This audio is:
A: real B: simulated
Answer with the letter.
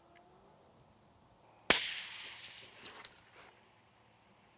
A